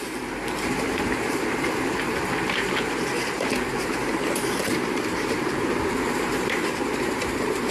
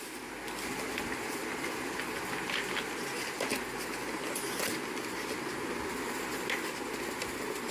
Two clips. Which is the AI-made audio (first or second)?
first